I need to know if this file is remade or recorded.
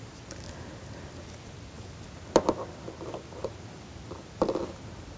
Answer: recorded